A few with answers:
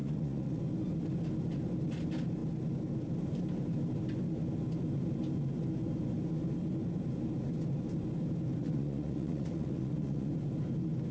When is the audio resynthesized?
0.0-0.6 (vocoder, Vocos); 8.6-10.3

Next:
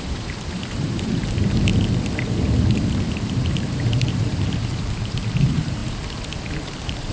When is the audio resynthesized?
0.0-1.7 (vocoder, BigVGAN v2); 3.1-5.8; 6.6-7.1

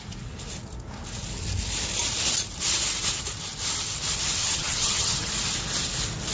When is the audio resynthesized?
4.4-5.3 (vocoder, HiFi-GAN)

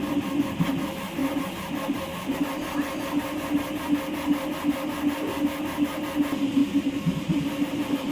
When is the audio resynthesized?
1.2-2.4 (vocoder, BigVGAN v2); 6.6-8.1

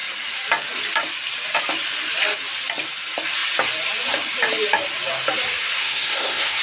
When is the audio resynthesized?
5.8-6.6 (codec, SNAC)

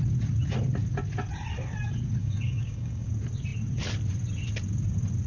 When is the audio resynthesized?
2.2-3.1 (codec, DAC)

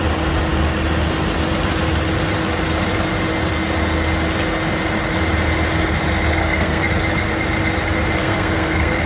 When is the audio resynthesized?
6.4-6.9 (codec, SNAC); 8.2-9.1

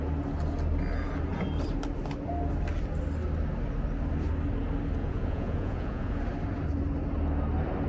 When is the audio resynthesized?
5.0-6.1 (vocoder, Vocos)